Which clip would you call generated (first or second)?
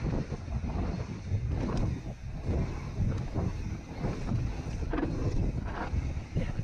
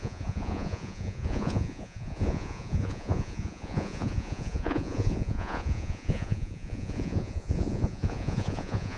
second